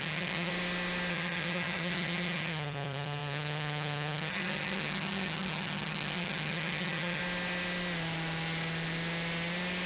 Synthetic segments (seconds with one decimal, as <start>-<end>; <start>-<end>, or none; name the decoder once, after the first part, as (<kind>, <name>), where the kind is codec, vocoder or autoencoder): 0.0-0.5 (vocoder, HiFi-GAN); 1.1-7.2